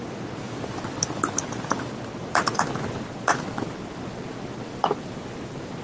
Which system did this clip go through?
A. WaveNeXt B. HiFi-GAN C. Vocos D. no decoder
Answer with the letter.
D